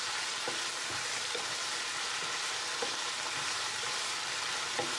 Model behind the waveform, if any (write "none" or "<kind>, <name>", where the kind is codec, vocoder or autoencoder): vocoder, BigVGAN v2